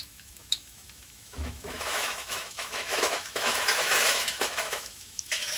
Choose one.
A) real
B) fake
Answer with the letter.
B